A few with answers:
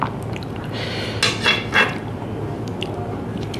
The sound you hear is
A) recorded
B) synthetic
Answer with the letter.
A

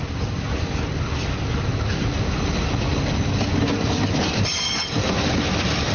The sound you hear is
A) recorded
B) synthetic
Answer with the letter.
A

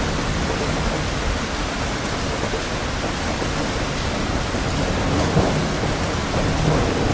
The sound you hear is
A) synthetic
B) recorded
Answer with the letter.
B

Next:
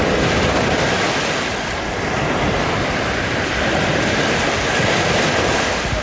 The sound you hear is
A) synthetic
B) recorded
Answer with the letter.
B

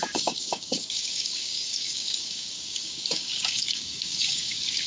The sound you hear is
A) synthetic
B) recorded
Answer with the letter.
A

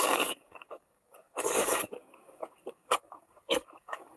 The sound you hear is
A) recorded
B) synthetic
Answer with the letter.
B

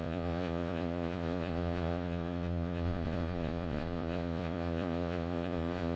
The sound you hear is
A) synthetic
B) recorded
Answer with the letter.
A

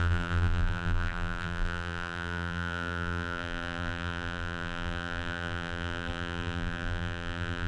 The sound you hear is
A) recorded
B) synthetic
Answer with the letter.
B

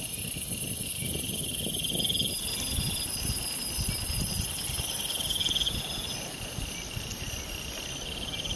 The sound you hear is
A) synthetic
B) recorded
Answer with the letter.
B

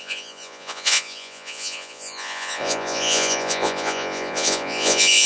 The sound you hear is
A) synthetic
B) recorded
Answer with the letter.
A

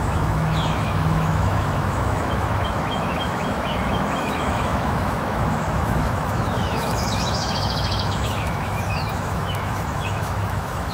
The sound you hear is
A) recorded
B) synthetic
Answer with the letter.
B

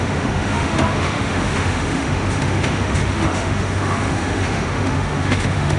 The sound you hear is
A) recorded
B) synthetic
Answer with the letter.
B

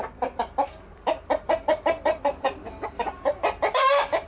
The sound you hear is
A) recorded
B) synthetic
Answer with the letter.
B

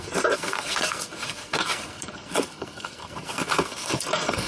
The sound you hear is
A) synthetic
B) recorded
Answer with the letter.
A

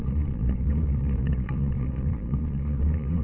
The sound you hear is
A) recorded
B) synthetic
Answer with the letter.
B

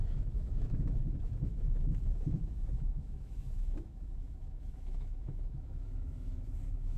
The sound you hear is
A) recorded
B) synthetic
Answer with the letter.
B